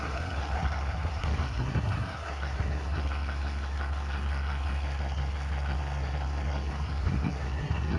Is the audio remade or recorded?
remade